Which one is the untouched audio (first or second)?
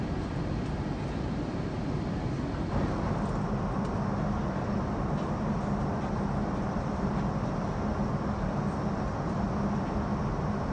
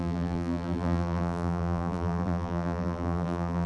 first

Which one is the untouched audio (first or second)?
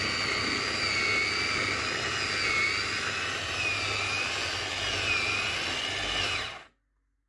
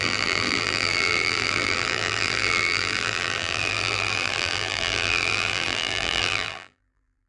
first